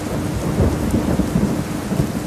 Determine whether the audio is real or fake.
real